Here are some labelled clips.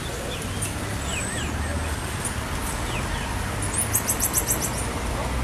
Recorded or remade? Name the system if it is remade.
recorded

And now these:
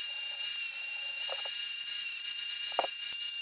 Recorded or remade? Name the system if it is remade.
recorded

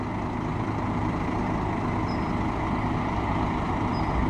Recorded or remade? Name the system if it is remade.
recorded